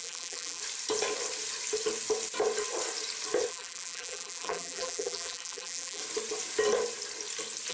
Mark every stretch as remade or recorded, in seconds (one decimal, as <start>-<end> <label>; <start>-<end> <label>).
0.0-0.6 remade; 0.6-3.5 recorded; 3.5-6.0 remade; 6.0-7.7 recorded